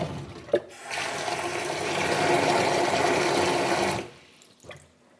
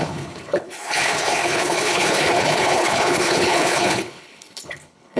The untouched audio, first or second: first